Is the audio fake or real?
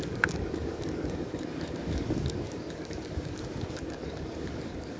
fake